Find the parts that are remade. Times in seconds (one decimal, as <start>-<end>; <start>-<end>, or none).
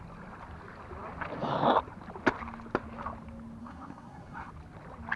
3.6-4.5